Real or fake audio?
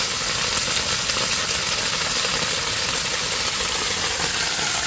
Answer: real